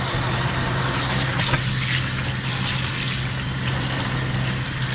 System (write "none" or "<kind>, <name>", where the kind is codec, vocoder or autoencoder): none